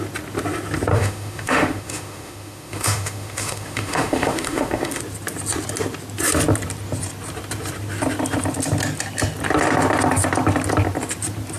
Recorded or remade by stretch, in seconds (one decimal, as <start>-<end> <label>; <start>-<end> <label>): 0.0-0.9 recorded; 0.9-5.0 remade; 5.0-11.6 recorded